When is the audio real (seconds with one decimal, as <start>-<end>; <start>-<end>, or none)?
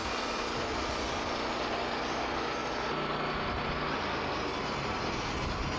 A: 0.0-5.8